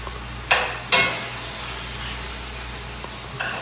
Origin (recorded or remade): recorded